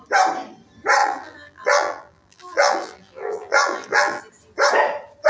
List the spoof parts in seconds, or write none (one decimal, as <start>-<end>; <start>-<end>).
1.0-4.2

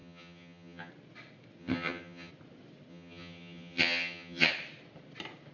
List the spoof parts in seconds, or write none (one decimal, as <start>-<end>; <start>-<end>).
0.0-0.9; 1.6-2.3; 2.9-4.5